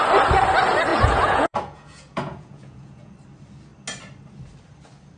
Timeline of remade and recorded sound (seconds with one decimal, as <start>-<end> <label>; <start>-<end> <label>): 0.0-0.9 recorded; 0.9-3.1 remade; 3.1-5.2 recorded